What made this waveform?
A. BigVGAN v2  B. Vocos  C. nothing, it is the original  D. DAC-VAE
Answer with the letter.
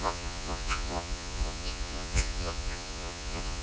B